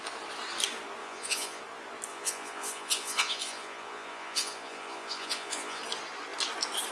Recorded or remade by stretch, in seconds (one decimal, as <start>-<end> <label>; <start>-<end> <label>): 0.0-1.0 recorded; 1.0-1.6 remade; 1.6-2.1 recorded; 2.1-5.8 remade; 5.8-6.9 recorded